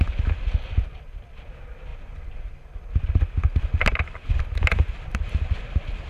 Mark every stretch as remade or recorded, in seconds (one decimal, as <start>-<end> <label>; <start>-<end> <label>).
0.0-6.1 recorded